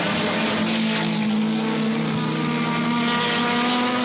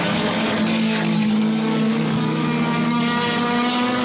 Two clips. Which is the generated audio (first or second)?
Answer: second